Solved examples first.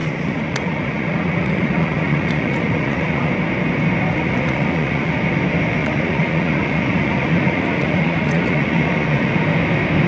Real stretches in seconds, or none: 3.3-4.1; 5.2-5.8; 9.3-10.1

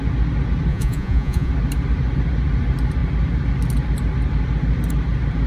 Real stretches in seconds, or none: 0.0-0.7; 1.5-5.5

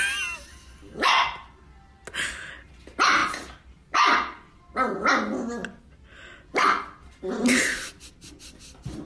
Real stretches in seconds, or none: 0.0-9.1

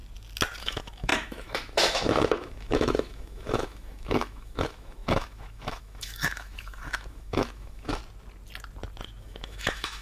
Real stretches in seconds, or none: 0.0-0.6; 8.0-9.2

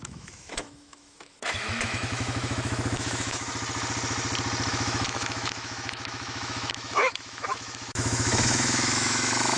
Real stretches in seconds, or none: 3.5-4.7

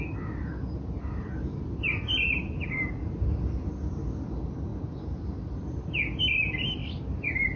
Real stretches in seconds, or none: 0.0-7.6

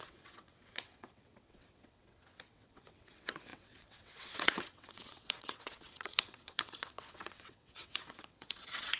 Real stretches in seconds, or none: none